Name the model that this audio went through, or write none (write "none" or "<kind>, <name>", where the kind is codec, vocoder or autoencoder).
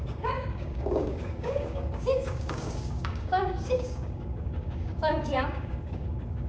codec, DAC